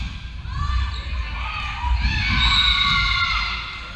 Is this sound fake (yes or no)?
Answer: no